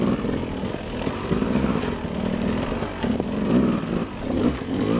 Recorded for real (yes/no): yes